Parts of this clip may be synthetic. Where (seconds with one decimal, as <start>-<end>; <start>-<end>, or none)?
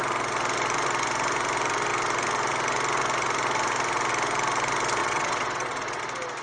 5.0-6.0